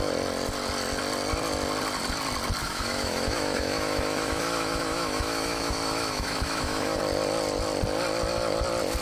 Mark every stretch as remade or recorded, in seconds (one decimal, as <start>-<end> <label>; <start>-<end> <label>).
0.0-2.6 recorded; 2.6-7.0 remade; 7.0-9.0 recorded